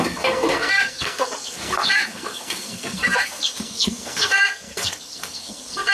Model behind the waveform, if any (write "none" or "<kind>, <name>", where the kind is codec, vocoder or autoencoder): codec, SNAC